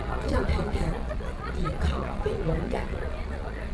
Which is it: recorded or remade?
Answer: remade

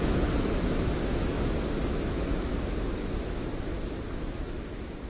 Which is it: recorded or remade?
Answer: recorded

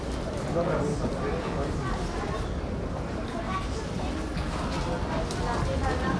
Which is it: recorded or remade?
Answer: recorded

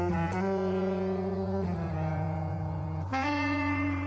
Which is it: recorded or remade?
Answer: remade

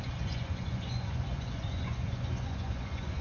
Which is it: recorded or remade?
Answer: remade